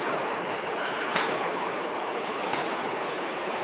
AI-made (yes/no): yes